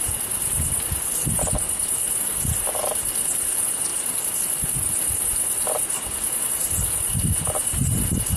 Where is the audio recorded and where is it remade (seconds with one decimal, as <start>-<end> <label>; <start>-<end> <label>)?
0.0-8.4 recorded